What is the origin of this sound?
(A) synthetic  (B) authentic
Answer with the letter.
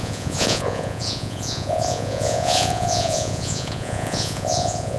A